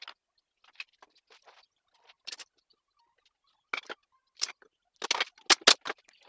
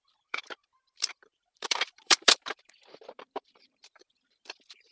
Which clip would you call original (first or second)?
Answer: first